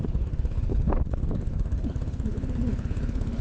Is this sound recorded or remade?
remade